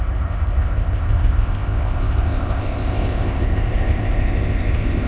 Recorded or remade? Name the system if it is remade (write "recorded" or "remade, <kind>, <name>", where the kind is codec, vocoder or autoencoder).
remade, codec, ZipCodec